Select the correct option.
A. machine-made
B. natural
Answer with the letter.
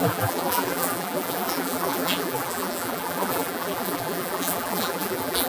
A